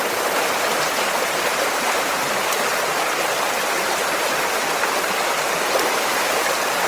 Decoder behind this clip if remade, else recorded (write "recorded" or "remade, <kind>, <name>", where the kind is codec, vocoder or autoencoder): recorded